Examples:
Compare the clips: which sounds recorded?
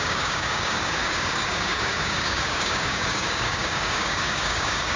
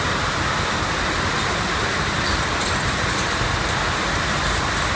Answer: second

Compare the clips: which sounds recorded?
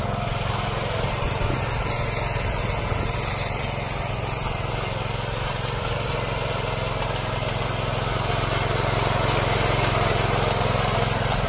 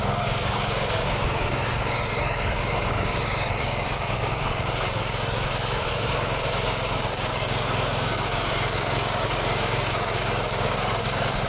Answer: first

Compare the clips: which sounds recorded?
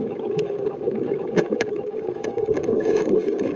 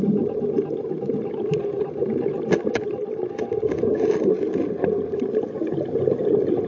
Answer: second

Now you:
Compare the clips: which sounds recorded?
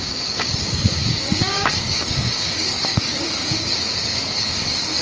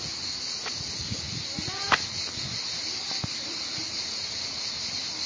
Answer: second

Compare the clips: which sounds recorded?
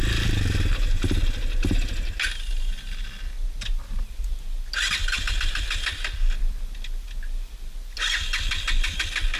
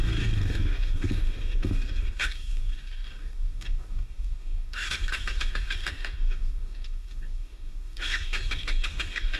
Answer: first